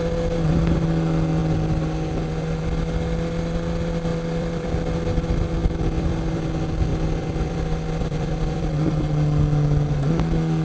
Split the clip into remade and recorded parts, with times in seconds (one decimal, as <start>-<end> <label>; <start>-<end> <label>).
0.0-4.1 recorded; 4.1-4.7 remade; 4.7-5.6 recorded; 5.6-6.4 remade; 6.4-6.9 recorded; 6.9-9.0 remade; 9.0-10.6 recorded